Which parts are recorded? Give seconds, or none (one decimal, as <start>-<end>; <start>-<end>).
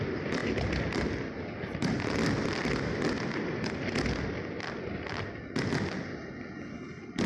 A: 0.0-7.3